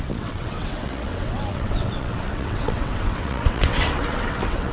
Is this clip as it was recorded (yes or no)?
no